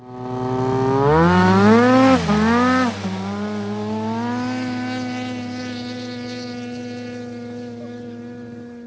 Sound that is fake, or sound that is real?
real